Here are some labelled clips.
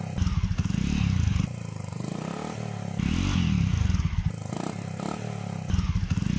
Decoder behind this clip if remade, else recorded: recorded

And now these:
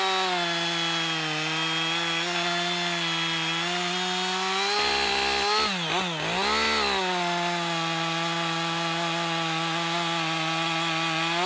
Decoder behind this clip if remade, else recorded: recorded